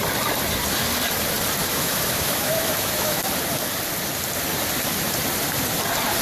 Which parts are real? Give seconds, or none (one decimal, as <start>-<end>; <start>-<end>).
0.0-1.6; 3.2-6.2